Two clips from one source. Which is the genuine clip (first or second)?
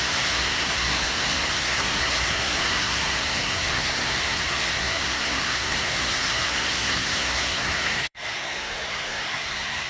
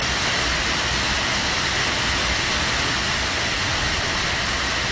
second